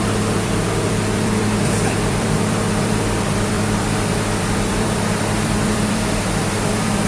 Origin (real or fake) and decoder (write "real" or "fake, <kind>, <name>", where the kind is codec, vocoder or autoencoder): fake, vocoder, BigVGAN v2